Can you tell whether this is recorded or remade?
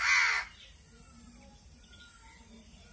recorded